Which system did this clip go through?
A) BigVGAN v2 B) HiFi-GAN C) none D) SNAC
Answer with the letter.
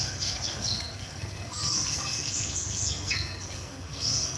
D